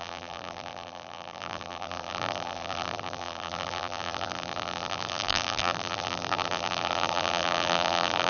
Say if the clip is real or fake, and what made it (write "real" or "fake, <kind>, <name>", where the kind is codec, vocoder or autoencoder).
fake, vocoder, BigVGAN v2